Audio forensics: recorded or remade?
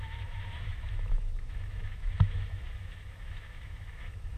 remade